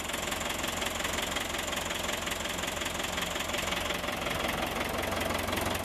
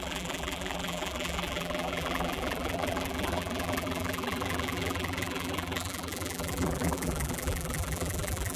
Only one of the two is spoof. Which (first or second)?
second